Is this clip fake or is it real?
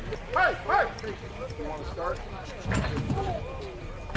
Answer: real